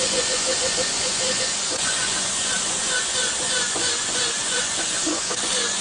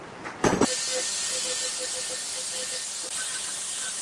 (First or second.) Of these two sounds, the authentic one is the second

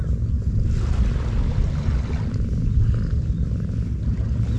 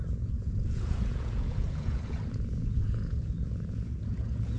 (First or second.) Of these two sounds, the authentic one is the first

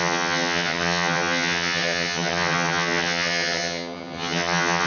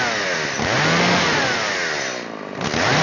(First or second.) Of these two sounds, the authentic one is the second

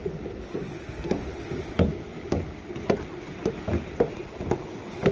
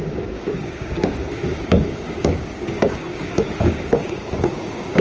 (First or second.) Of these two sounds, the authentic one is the first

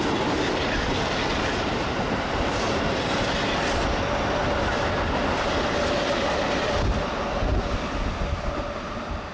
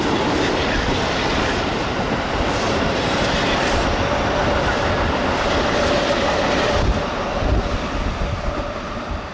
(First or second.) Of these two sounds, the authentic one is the first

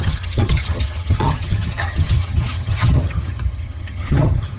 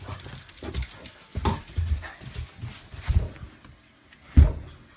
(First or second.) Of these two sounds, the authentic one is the second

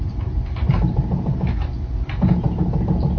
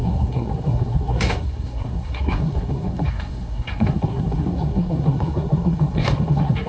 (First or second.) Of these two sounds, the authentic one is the first